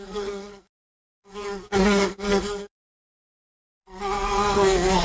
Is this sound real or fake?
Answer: fake